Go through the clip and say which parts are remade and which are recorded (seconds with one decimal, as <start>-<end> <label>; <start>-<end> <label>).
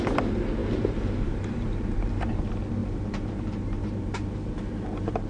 0.0-0.6 recorded; 0.6-2.4 remade; 2.4-2.8 recorded; 2.8-5.3 remade